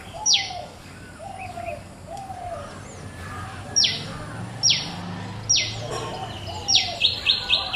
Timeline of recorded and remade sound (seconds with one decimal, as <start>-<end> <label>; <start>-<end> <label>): 0.0-2.3 remade; 2.3-7.8 recorded